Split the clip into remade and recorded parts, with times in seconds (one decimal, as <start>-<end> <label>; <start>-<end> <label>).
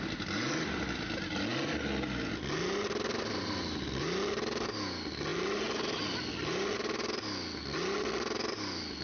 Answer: 0.0-9.0 recorded